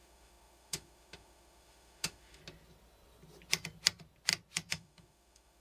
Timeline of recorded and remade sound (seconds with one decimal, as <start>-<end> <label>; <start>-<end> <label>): 0.0-2.4 remade; 2.4-4.7 recorded; 4.7-5.6 remade